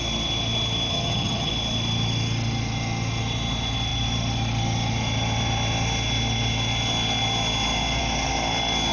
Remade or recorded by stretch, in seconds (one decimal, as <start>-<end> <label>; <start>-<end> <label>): 0.0-0.9 recorded; 0.9-1.5 remade; 1.5-8.9 recorded